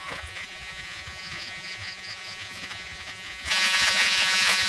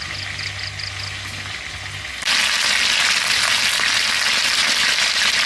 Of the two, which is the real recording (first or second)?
second